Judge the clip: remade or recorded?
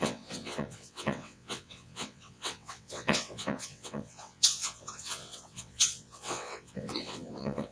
remade